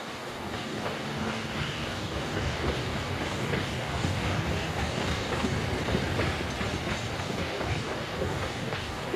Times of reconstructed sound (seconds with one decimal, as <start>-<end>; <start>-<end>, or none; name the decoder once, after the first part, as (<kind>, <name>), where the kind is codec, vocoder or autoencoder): 0.0-5.6 (codec, DAC); 7.2-9.2